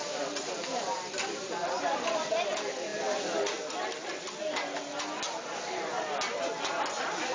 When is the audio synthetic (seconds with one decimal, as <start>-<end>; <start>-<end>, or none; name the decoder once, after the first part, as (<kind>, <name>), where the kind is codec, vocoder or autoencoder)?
none